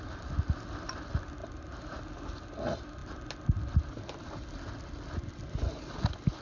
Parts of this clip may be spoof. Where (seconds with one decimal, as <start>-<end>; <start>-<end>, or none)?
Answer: none